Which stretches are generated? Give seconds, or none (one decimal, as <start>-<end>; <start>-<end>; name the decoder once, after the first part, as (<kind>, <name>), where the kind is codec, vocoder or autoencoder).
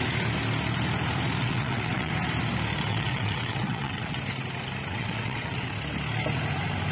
1.4-2.1 (vocoder, WaveNeXt); 2.9-4.2; 4.9-5.7